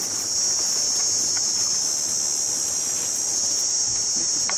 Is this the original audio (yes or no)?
yes